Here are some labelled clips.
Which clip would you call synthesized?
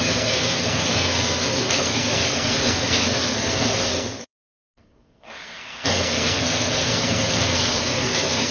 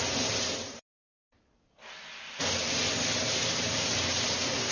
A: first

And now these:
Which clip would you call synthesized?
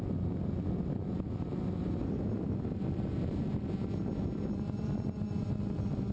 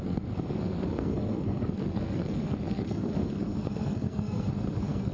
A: second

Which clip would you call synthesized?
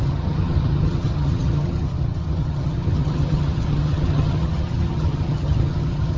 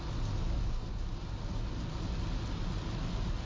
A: first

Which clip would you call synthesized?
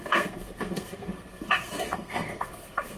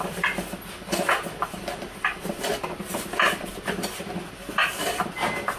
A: first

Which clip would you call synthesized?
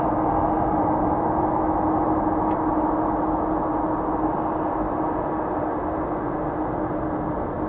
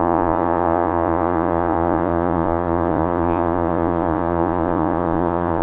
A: second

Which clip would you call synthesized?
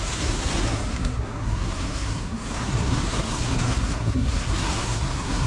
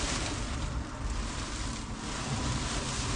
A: first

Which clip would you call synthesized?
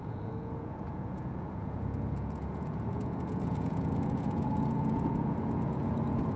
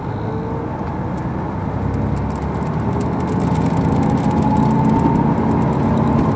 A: first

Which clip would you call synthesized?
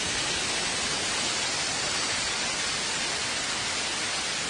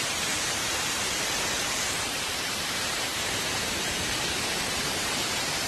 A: second